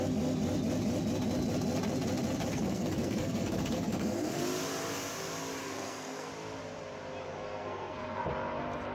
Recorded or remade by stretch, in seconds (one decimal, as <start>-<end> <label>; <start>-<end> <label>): 0.0-2.5 recorded; 2.5-4.4 remade; 4.4-5.6 recorded; 5.6-6.3 remade; 6.3-7.3 recorded; 7.3-8.2 remade; 8.2-8.9 recorded